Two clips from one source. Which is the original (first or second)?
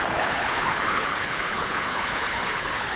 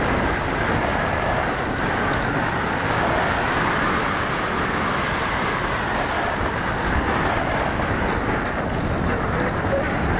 second